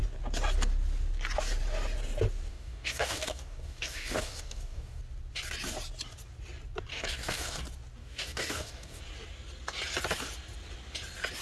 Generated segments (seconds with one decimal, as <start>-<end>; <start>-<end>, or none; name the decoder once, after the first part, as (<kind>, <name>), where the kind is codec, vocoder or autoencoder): 2.5-5.0 (codec, DAC); 6.9-7.6; 8.0-9.0

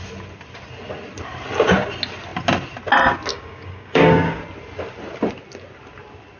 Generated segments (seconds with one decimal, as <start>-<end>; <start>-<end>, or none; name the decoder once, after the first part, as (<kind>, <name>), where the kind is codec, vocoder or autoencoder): 3.3-4.4 (codec, DAC)

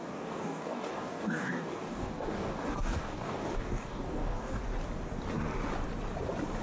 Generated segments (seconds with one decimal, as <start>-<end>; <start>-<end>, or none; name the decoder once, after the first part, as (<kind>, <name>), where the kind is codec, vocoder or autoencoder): 0.0-4.6 (codec, DAC)

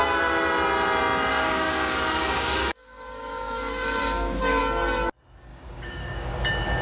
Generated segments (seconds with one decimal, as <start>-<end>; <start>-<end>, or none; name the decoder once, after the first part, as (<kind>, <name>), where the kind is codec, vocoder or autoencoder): 1.3-4.6 (codec, DAC); 5.5-6.3

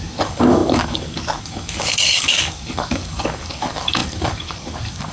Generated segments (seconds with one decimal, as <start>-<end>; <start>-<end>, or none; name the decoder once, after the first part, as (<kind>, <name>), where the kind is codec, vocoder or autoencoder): 0.0-5.1 (codec, DAC)